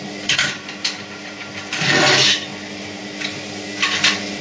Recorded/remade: recorded